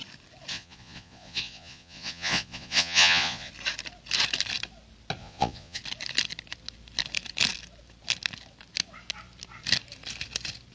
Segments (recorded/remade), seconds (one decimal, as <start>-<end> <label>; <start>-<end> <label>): 0.0-0.5 recorded; 0.5-3.5 remade; 3.5-5.2 recorded; 5.2-5.8 remade; 5.8-10.7 recorded